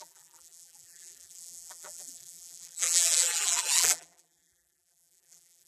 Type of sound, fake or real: fake